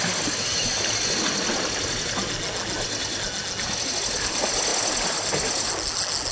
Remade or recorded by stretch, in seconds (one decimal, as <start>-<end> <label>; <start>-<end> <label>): 0.0-6.3 recorded